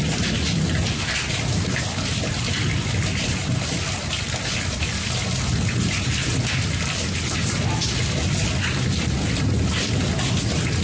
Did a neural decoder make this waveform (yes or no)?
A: no